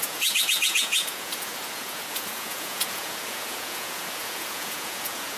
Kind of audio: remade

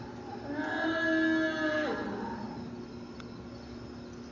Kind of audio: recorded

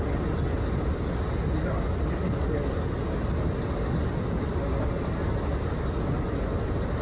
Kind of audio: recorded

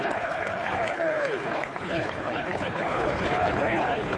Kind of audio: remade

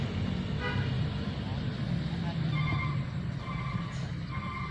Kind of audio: recorded